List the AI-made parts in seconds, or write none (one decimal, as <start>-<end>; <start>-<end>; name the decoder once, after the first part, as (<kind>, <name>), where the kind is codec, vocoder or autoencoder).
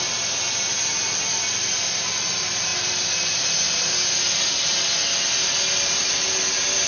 none